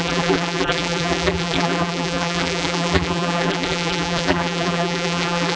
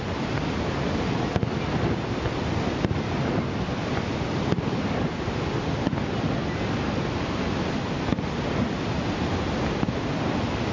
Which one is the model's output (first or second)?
first